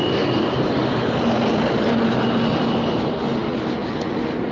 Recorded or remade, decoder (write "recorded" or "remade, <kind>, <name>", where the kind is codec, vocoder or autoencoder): recorded